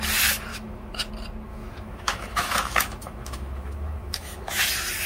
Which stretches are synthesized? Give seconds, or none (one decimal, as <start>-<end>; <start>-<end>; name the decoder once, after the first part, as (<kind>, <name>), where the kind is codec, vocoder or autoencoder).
0.5-1.1 (autoencoder, DAC-VAE); 1.5-4.6